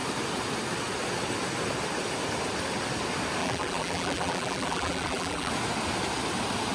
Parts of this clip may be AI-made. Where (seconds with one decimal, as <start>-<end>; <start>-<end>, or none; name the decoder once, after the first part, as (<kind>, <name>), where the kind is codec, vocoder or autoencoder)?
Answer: 3.4-5.5 (vocoder, BigVGAN v2)